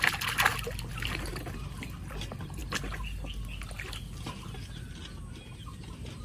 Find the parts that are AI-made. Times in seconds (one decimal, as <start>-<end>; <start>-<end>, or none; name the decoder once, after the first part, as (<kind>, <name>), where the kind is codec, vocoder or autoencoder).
none